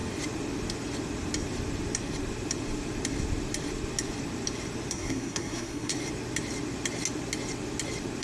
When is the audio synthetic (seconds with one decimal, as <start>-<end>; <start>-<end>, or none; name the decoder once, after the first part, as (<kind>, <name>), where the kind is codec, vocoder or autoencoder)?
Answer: 4.9-5.9 (codec, SNAC)

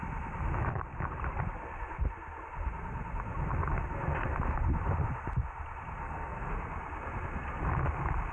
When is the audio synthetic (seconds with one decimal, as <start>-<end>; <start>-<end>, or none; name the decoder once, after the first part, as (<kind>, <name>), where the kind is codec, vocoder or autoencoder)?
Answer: 6.0-6.5 (codec, SNAC)

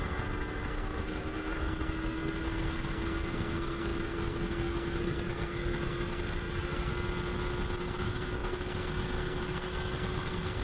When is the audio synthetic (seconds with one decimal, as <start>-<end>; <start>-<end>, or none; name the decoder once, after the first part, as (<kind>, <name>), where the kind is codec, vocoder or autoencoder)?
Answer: 0.0-6.9 (codec, SNAC); 7.8-10.6

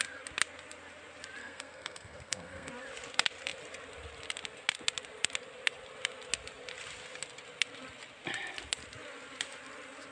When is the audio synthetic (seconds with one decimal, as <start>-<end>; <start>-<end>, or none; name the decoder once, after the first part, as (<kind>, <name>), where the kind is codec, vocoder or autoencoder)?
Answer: 1.4-2.7 (codec, SNAC)

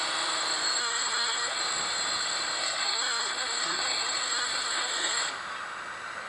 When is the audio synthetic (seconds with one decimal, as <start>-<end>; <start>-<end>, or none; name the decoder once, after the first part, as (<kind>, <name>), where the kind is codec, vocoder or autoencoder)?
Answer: 0.8-1.6 (codec, SNAC); 2.6-5.2

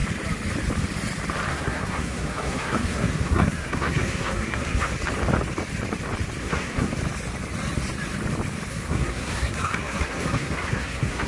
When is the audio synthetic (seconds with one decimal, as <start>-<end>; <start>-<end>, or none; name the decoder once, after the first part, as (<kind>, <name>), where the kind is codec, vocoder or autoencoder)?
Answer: 1.5-4.9 (codec, SNAC); 6.4-6.9; 8.7-11.3